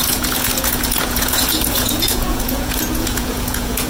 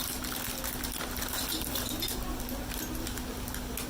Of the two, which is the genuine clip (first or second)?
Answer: second